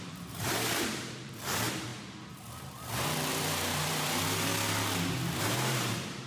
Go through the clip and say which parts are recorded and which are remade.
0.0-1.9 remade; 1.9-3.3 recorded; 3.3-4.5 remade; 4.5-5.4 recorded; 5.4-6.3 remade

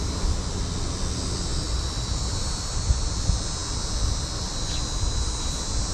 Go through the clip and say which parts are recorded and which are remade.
0.0-1.5 recorded; 1.5-3.1 remade; 3.1-5.9 recorded

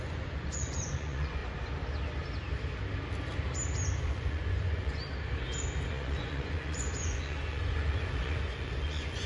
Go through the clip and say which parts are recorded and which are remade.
0.0-1.4 remade; 1.4-4.0 recorded; 4.0-5.0 remade; 5.0-5.9 recorded; 5.9-9.3 remade

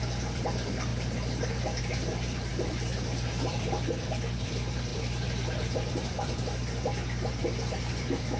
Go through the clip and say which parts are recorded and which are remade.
0.0-0.9 remade; 0.9-1.8 recorded; 1.8-8.4 remade

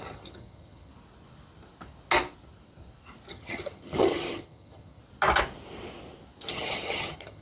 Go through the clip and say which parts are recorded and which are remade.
0.0-0.9 remade; 0.9-3.3 recorded; 3.3-5.0 remade; 5.0-6.5 recorded; 6.5-7.4 remade

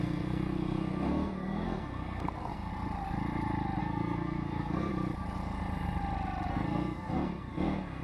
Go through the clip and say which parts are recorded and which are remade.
0.0-2.7 remade; 2.7-3.8 recorded; 3.8-4.9 remade; 4.9-6.5 recorded; 6.5-8.0 remade